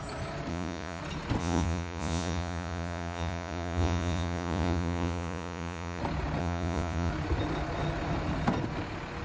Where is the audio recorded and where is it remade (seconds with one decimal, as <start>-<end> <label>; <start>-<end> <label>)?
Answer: 0.0-0.5 recorded; 0.5-1.0 remade; 1.0-1.4 recorded; 1.4-6.0 remade; 6.0-6.4 recorded; 6.4-7.1 remade; 7.1-9.2 recorded